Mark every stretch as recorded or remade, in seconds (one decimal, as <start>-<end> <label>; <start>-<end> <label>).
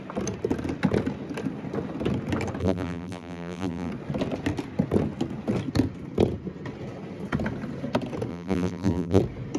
0.0-2.6 recorded; 2.6-3.9 remade; 3.9-8.3 recorded; 8.3-9.2 remade; 9.2-9.6 recorded